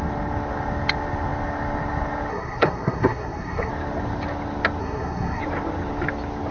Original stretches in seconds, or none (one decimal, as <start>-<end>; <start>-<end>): 0.0-2.3; 3.7-4.8; 5.4-6.5